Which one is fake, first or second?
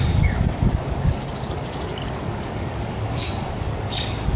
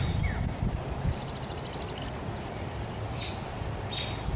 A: first